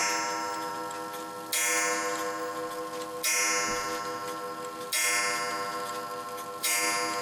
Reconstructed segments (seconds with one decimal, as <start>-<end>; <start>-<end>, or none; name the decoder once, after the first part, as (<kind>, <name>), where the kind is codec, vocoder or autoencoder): none